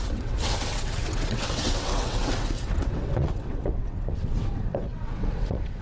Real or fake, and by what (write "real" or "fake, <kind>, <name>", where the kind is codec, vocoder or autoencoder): fake, vocoder, WaveNeXt